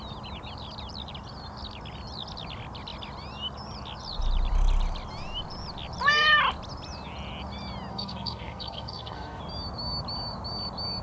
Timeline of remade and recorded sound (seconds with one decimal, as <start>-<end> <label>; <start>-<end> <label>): 0.0-7.9 recorded; 7.9-9.4 remade; 9.4-11.0 recorded